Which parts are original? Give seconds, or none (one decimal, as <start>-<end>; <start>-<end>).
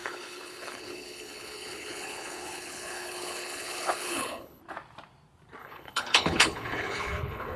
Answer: 4.6-5.6